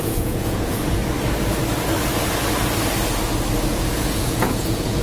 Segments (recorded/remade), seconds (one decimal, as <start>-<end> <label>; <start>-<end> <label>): 0.0-1.0 remade; 1.0-3.7 recorded; 3.7-5.0 remade